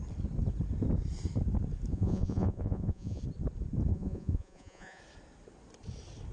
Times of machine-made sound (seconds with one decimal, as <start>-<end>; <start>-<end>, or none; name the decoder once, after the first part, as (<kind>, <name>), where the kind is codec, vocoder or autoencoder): 1.9-3.2 (vocoder, Vocos); 3.9-5.0